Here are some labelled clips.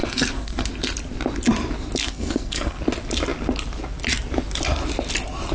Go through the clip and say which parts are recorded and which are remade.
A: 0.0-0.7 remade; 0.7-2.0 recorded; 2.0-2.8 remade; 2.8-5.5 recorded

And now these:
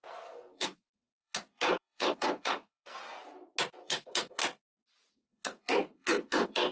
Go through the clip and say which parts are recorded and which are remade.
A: 0.0-3.0 remade; 3.0-3.8 recorded; 3.8-4.4 remade; 4.4-5.1 recorded; 5.1-6.7 remade